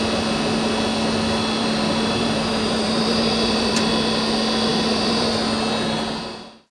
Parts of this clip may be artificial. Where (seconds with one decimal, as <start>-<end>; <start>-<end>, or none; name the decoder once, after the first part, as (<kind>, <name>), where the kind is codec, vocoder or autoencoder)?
1.6-3.9 (vocoder, BigVGAN v2); 4.7-5.3